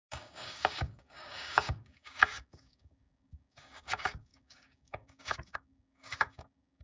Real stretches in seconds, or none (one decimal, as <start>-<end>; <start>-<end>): none